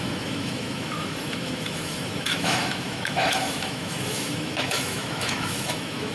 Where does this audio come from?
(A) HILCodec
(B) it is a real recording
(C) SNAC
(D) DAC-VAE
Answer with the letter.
D